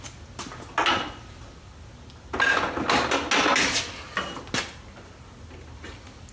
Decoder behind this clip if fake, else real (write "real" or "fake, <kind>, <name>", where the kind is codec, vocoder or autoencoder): real